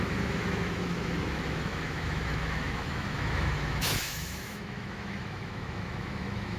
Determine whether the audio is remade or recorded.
remade